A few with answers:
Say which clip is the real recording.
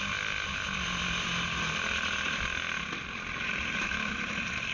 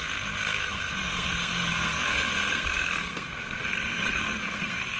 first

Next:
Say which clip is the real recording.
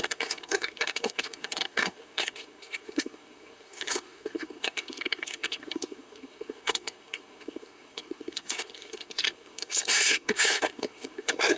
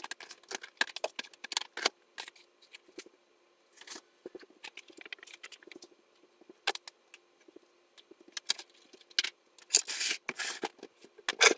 second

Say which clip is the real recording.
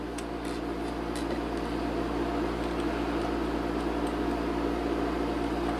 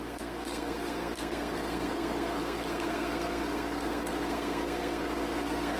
first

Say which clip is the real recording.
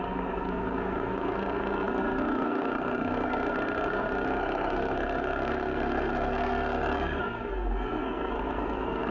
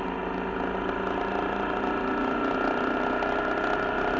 second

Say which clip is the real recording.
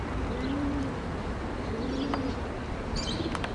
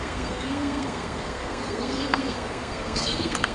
first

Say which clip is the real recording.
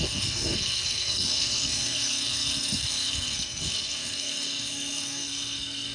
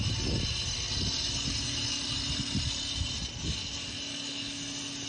second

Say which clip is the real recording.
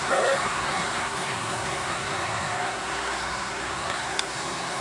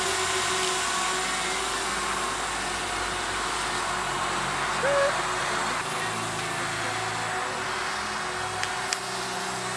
second